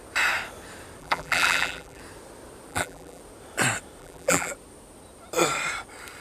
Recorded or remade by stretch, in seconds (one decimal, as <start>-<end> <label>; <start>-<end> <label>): 0.0-1.0 recorded; 1.0-2.0 remade; 2.0-2.7 recorded; 2.7-3.2 remade; 3.2-4.0 recorded; 4.0-4.5 remade; 4.5-6.2 recorded